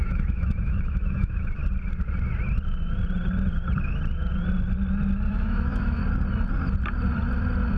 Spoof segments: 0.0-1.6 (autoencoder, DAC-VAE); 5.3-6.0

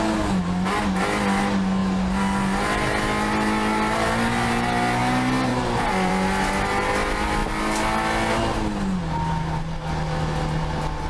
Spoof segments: none

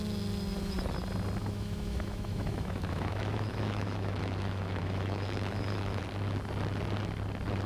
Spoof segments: 1.4-6.0 (autoencoder, DAC-VAE)